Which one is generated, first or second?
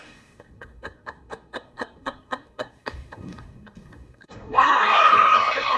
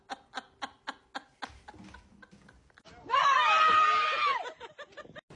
first